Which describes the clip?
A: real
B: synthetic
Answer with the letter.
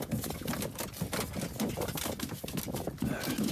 A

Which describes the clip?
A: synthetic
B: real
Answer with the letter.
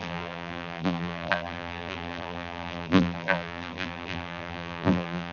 A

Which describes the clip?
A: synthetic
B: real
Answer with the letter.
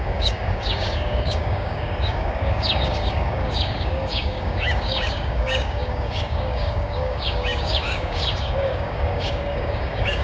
A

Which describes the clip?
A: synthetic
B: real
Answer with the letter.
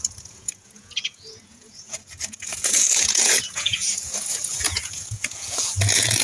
A